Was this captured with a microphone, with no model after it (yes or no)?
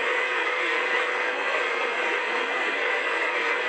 no